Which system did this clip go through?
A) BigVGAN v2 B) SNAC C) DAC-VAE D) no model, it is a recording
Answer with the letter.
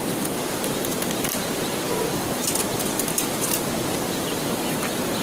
D